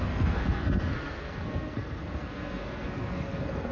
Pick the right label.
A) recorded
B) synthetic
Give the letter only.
B